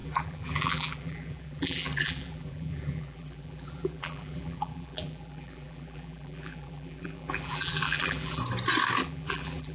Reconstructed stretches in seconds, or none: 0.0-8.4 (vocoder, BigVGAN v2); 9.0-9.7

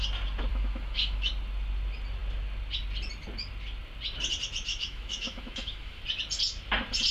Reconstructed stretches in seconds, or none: 0.5-1.3 (autoencoder, DAC-VAE); 4.7-6.0

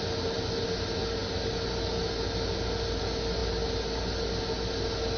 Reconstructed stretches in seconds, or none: none

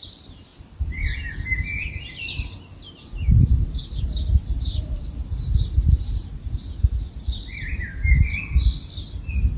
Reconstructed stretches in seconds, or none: 0.5-2.2 (vocoder, BigVGAN v2); 3.5-6.8

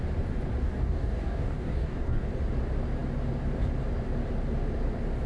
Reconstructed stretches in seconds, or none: 0.6-2.3 (codec, DAC)

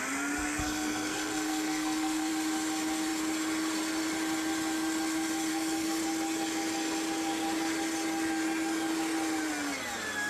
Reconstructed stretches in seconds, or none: 0.4-2.3 (codec, SNAC); 5.5-6.0

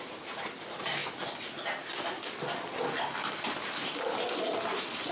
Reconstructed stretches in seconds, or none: none